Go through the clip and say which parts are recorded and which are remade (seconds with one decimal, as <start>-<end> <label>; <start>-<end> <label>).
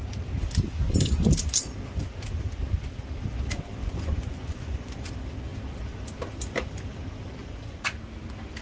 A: 0.0-3.8 recorded; 3.8-5.1 remade; 5.1-7.4 recorded; 7.4-7.9 remade; 7.9-8.6 recorded